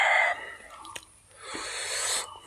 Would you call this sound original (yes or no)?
yes